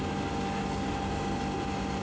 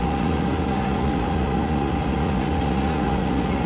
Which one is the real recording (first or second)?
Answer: first